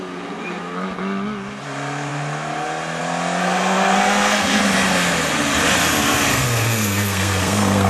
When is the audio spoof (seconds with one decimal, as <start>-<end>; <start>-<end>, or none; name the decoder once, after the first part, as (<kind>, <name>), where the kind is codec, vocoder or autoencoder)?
3.4-4.6 (codec, SNAC); 6.3-7.9